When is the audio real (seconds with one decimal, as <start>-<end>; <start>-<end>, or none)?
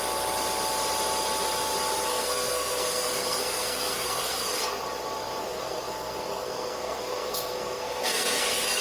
0.0-2.1; 4.7-5.4